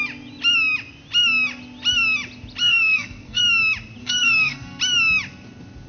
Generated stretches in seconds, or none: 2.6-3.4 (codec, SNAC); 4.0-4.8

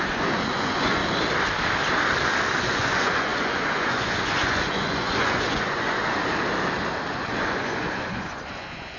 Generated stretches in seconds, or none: 0.0-1.0 (vocoder, Vocos); 2.6-6.2; 7.1-9.0